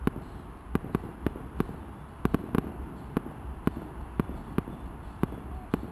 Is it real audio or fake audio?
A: real